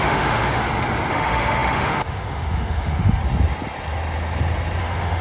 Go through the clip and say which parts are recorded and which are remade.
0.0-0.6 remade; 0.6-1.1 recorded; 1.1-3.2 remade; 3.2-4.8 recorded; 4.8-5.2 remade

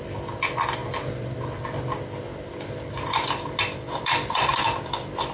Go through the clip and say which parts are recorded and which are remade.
0.0-5.3 recorded

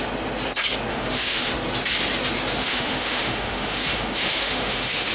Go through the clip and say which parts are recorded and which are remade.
0.0-0.9 recorded; 0.9-1.5 remade; 1.5-2.6 recorded; 2.6-5.1 remade

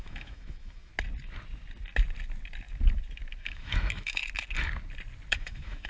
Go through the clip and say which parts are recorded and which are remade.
0.0-0.9 remade; 0.9-3.4 recorded; 3.4-4.2 remade; 4.2-5.3 recorded; 5.3-5.9 remade

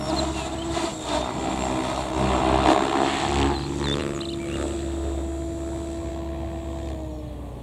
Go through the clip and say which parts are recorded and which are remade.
0.0-7.6 recorded

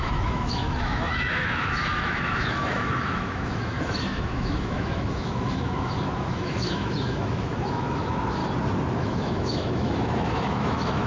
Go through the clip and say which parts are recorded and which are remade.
0.0-8.4 remade; 8.4-8.9 recorded; 8.9-11.1 remade

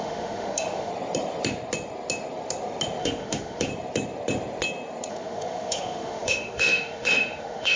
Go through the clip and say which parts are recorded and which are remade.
0.0-0.9 remade; 0.9-3.0 recorded; 3.0-3.7 remade; 3.7-5.1 recorded; 5.1-7.8 remade

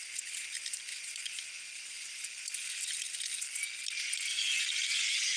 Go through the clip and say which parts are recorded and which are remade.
0.0-5.4 recorded